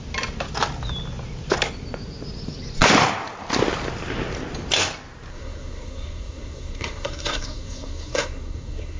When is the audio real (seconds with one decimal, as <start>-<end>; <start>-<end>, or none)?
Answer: 0.0-5.3